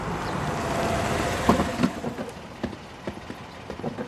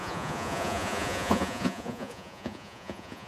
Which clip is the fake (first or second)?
second